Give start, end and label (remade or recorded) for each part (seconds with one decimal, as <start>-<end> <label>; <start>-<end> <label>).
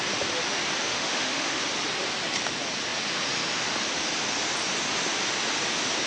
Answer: 0.0-0.9 recorded; 0.9-1.6 remade; 1.6-6.1 recorded